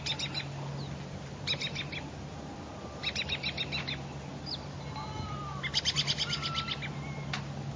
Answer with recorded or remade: recorded